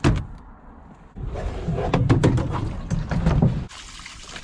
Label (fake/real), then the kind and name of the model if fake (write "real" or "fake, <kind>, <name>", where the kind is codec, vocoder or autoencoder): real